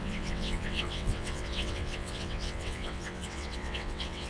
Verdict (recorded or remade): remade